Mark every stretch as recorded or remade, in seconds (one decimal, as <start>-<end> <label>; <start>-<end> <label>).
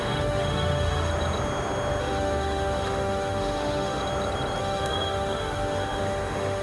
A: 0.0-1.1 remade; 1.1-2.0 recorded; 2.0-4.0 remade; 4.0-4.6 recorded; 4.6-6.6 remade